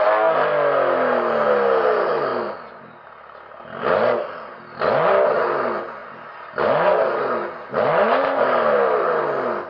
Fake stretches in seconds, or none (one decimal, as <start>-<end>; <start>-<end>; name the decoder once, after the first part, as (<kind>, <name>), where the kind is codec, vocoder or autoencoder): none